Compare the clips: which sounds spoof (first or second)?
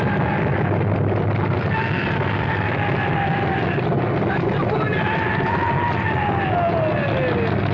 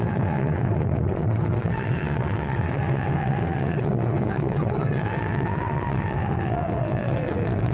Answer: second